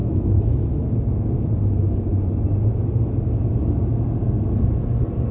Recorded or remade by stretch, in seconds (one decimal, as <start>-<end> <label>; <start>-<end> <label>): 0.0-0.9 remade; 0.9-5.3 recorded